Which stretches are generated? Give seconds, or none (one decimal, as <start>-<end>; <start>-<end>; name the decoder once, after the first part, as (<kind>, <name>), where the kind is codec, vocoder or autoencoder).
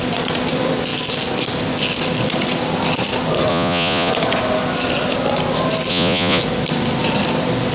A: 3.5-4.1 (vocoder, Vocos); 5.9-6.4